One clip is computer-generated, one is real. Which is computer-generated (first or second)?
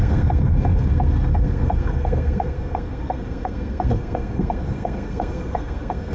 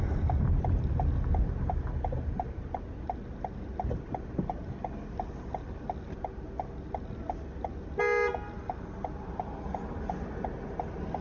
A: first